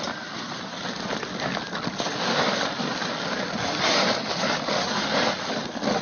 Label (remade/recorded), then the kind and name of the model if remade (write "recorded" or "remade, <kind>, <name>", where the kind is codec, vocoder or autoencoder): remade, vocoder, BigVGAN v2